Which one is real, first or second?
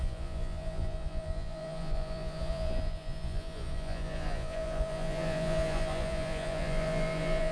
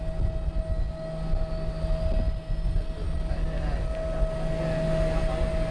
second